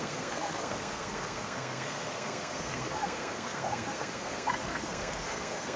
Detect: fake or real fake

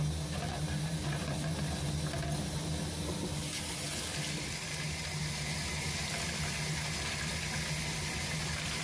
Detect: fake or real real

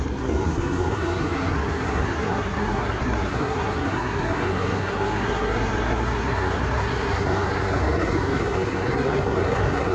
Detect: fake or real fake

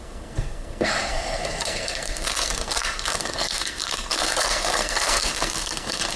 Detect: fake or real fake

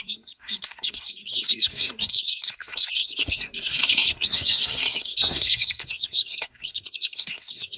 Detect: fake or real fake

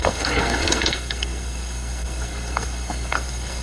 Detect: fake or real fake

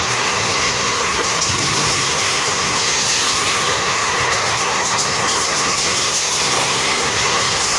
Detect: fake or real fake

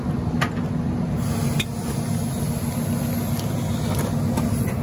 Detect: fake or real real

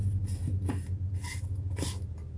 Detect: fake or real real